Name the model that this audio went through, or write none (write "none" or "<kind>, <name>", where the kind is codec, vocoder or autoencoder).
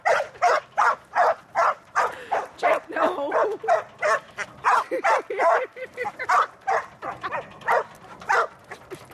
none